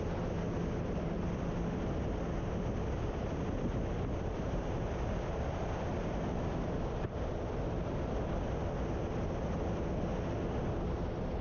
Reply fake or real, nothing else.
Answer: real